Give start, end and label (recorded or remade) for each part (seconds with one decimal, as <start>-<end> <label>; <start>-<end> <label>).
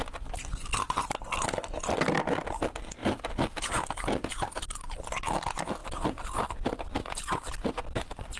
0.0-3.0 recorded; 3.0-4.3 remade; 4.3-5.8 recorded; 5.8-6.5 remade; 6.5-8.4 recorded